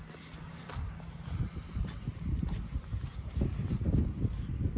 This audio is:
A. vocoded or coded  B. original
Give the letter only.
B